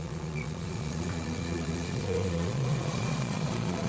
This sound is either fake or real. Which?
fake